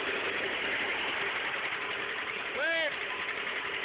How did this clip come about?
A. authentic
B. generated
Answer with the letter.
A